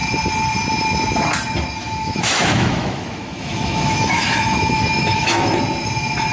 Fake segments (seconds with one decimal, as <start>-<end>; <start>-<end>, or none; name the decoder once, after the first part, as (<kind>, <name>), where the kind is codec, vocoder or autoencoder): 1.8-5.6 (autoencoder, DAC-VAE)